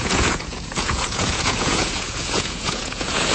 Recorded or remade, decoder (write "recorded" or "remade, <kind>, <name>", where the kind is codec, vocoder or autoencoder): remade, vocoder, Vocos